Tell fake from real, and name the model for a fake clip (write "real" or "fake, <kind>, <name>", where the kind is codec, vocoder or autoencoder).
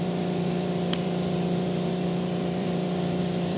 fake, vocoder, BigVGAN v2